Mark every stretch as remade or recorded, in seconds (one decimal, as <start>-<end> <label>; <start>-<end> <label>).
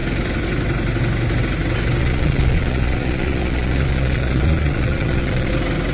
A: 0.0-2.0 recorded; 2.0-5.5 remade; 5.5-5.9 recorded